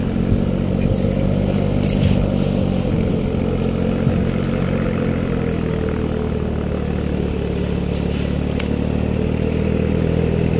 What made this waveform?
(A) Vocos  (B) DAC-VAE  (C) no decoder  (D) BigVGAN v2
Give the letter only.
C